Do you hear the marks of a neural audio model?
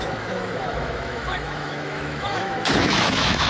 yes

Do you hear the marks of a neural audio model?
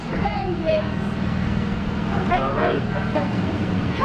yes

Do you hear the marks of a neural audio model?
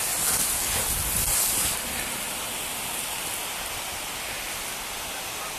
no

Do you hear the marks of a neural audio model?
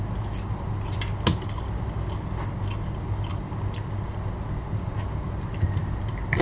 no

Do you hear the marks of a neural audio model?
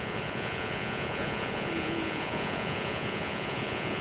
yes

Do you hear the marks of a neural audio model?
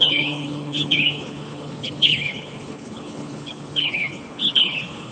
yes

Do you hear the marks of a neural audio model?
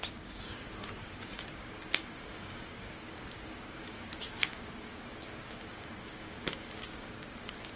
yes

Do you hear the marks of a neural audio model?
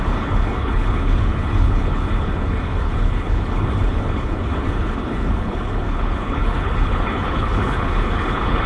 yes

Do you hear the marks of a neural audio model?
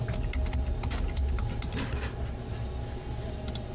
no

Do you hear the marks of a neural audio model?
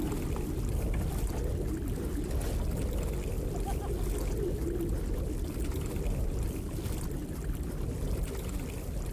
no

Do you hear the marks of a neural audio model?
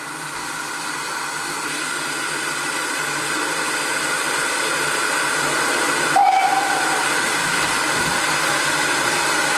no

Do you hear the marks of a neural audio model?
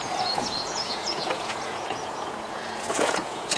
yes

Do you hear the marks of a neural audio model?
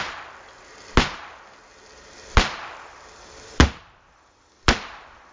no